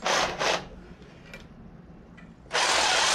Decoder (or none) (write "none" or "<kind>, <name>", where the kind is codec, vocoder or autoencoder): none